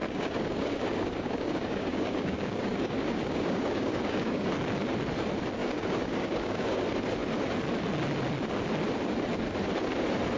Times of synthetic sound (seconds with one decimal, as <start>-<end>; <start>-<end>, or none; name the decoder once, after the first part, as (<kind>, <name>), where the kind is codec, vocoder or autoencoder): 0.0-4.5 (codec, DAC); 5.6-6.8